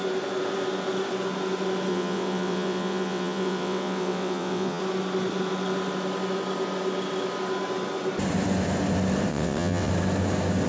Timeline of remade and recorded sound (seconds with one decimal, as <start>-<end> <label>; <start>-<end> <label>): 0.0-1.9 recorded; 1.9-4.8 remade; 4.8-9.3 recorded; 9.3-9.9 remade; 9.9-10.7 recorded